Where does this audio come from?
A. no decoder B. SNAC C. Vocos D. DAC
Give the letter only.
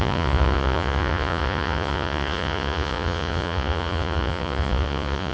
C